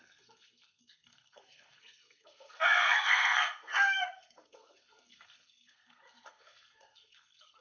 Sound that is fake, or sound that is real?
fake